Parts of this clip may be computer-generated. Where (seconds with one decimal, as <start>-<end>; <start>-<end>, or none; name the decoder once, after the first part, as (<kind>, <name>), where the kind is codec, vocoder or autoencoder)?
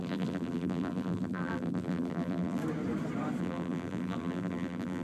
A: 0.0-2.6 (vocoder, BigVGAN v2); 3.4-5.0